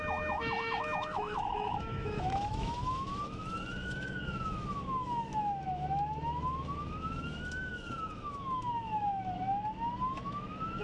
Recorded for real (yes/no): no